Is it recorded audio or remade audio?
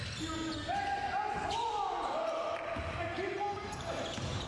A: recorded